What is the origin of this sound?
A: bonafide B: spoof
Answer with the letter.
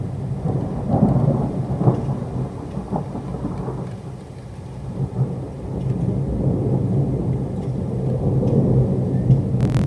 A